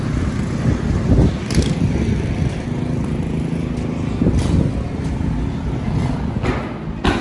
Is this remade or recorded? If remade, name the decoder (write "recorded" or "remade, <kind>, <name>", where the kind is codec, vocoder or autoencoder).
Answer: recorded